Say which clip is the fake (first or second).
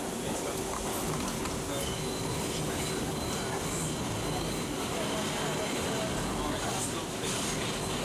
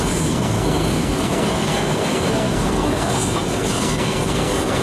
second